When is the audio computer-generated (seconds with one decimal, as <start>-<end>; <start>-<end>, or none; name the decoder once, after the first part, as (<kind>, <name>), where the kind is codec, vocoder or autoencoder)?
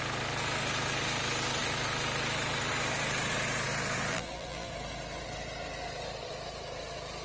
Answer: 4.1-4.7 (vocoder, BigVGAN v2)